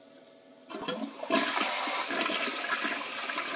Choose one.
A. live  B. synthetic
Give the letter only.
A